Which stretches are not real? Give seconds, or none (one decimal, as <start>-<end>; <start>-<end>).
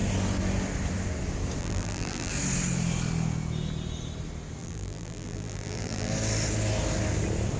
1.6-2.3; 4.6-6.1